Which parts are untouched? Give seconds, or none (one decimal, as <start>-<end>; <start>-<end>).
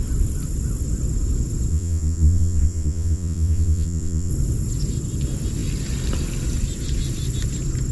0.0-1.7; 4.3-7.9